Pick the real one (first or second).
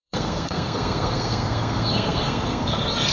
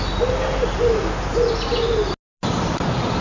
second